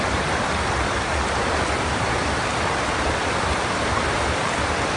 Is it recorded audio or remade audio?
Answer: remade